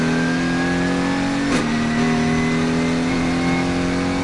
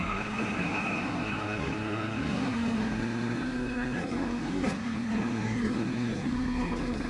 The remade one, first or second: second